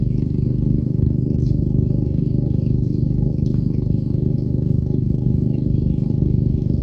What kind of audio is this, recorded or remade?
remade